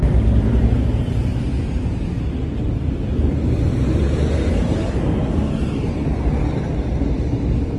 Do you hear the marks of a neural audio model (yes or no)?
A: no